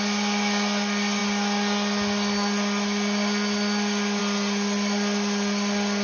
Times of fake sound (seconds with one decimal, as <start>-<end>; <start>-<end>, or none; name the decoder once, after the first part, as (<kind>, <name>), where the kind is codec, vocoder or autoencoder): none